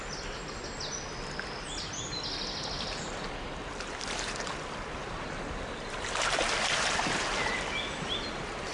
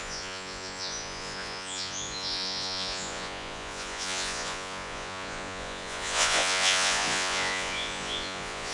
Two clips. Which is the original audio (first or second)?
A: first